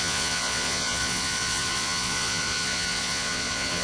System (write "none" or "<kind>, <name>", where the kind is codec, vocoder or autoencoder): vocoder, Vocos